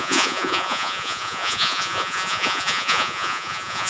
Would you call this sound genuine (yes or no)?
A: no